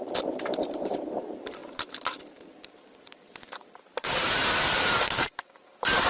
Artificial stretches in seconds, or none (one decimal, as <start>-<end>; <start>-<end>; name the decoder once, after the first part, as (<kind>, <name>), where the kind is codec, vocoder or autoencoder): 0.0-6.1 (vocoder, BigVGAN v2)

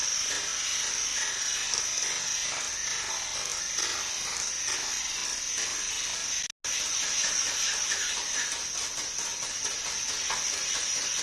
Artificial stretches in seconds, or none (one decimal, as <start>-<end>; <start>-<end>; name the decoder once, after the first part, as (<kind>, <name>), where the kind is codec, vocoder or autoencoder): 0.5-1.8 (vocoder, BigVGAN v2); 9.3-9.8

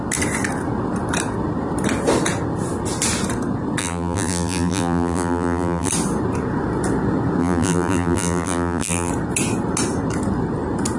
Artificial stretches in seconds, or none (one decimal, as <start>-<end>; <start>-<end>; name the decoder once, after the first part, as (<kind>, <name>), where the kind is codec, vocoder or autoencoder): 3.8-5.9 (vocoder, BigVGAN v2); 7.4-9.1